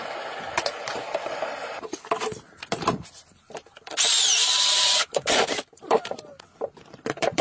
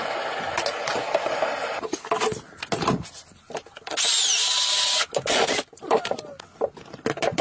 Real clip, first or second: second